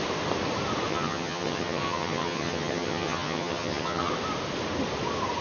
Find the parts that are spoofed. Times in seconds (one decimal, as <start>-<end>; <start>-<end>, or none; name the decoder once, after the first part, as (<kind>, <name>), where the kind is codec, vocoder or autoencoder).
0.9-4.1 (vocoder, HiFi-GAN)